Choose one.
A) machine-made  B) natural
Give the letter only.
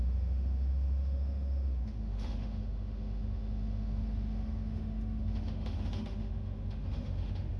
A